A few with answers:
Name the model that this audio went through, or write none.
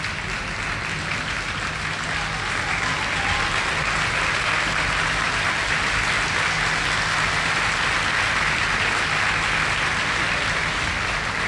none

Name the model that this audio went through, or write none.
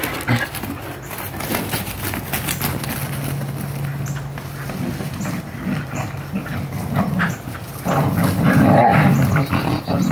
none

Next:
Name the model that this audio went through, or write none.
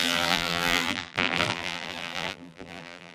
vocoder, BigVGAN v2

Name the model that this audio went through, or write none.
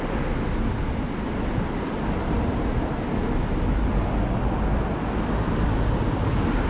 none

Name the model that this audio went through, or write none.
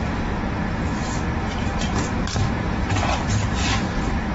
vocoder, BigVGAN v2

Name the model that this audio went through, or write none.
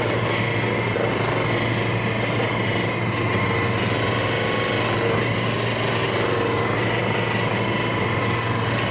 none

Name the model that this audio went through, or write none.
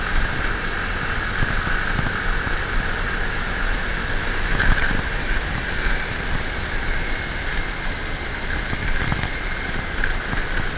none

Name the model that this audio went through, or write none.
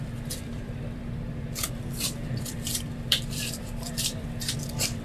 vocoder, BigVGAN v2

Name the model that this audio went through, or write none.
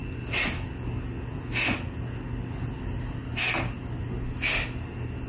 none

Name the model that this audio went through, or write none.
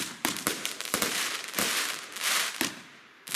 vocoder, BigVGAN v2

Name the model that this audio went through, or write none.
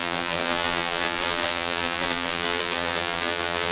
vocoder, BigVGAN v2